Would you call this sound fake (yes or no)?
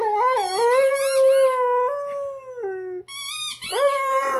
no